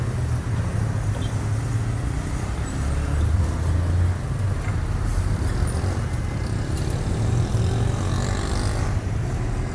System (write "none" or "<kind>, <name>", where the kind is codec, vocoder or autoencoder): none